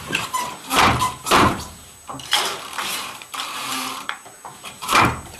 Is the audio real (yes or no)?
no